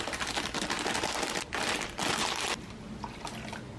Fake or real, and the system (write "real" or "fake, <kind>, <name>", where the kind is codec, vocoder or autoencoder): real